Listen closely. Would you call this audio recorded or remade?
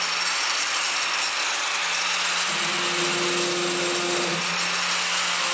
recorded